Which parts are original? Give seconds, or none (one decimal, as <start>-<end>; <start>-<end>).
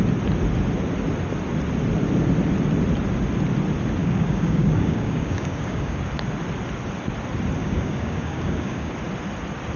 0.0-4.0; 6.0-7.6; 8.9-9.8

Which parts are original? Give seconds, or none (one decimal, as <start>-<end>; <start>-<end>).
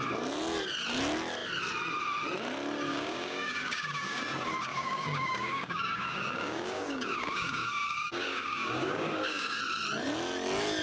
0.0-2.9; 4.2-4.7; 9.6-10.8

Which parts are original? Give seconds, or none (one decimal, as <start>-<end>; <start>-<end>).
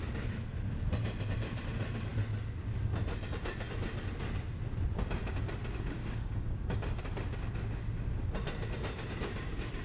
0.0-6.0; 7.0-9.8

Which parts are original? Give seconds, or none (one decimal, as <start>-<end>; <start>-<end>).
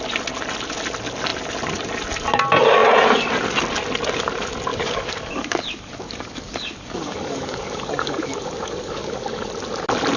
0.0-4.7; 9.5-10.2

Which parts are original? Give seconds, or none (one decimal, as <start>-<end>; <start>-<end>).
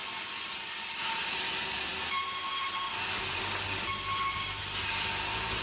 0.0-5.6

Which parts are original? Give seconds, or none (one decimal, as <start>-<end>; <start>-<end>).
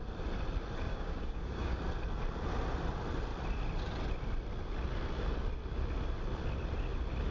0.0-0.9; 1.8-7.3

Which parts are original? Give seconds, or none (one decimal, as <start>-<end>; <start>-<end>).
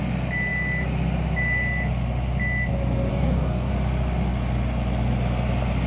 0.0-3.1; 3.7-5.9